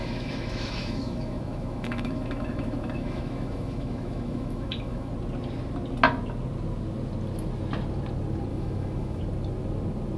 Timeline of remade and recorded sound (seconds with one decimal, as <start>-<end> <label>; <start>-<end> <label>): 0.0-5.1 remade; 5.1-8.5 recorded; 8.5-9.2 remade; 9.2-10.2 recorded